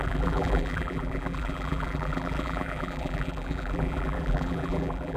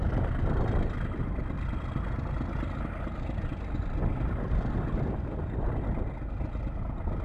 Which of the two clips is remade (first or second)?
first